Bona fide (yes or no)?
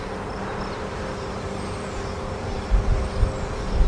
yes